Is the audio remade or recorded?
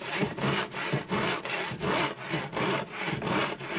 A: recorded